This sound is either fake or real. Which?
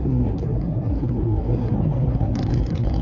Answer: fake